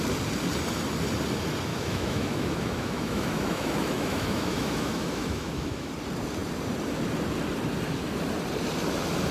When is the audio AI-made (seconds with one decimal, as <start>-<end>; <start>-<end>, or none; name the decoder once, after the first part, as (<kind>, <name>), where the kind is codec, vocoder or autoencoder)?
1.7-5.9 (autoencoder, DAC-VAE)